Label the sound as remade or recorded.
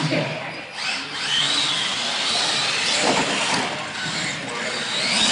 recorded